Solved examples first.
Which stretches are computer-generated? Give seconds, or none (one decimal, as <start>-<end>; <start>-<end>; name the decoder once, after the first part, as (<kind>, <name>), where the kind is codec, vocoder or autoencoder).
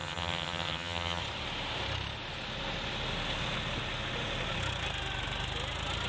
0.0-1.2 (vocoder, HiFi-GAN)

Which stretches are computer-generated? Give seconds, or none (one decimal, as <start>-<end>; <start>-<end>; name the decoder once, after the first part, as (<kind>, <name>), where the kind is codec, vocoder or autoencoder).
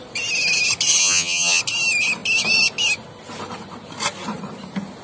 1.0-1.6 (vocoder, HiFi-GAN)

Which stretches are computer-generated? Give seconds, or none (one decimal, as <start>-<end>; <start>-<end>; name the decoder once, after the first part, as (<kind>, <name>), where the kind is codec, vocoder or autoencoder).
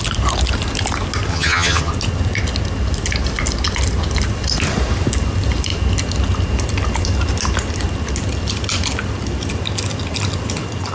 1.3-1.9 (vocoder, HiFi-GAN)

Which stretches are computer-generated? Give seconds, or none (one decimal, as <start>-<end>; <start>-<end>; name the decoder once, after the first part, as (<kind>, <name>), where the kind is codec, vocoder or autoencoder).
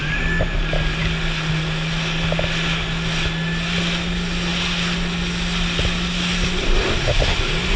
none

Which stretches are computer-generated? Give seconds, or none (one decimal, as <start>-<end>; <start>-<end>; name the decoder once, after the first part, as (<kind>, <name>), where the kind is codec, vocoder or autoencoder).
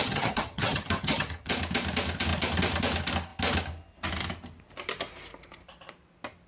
0.0-1.5 (vocoder, HiFi-GAN)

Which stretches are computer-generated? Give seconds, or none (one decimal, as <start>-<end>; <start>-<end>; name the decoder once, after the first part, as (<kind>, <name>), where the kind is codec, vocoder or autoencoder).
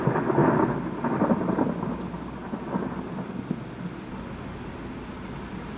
none